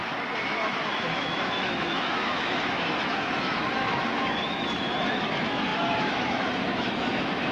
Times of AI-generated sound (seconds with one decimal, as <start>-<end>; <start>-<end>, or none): 0.5-7.5